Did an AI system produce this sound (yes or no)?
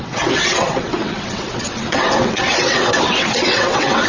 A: yes